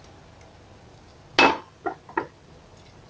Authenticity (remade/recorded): recorded